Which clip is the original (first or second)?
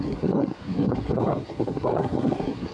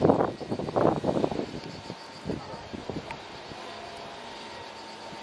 second